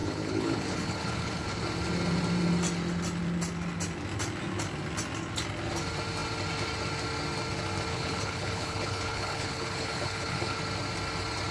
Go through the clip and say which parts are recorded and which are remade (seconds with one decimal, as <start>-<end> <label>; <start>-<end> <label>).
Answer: 0.0-1.6 remade; 1.6-7.9 recorded; 7.9-10.6 remade; 10.6-11.5 recorded